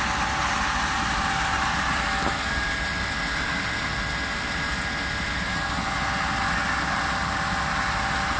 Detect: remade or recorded recorded